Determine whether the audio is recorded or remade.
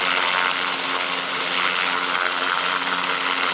recorded